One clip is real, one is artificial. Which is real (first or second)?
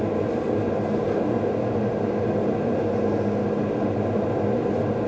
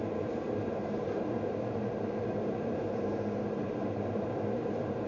first